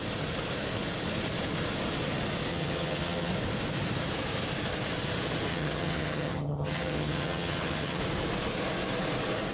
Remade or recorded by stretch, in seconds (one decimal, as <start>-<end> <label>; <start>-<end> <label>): 0.0-2.5 recorded; 2.5-3.3 remade; 3.3-5.5 recorded; 5.5-8.0 remade; 8.0-9.5 recorded